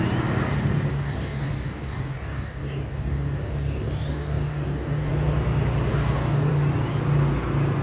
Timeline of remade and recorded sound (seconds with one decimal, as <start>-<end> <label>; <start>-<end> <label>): 0.0-0.9 recorded; 0.9-5.1 remade; 5.1-5.9 recorded; 5.9-6.5 remade; 6.5-7.8 recorded